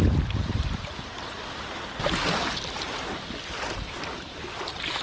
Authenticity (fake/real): real